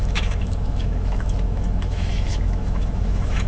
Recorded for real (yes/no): no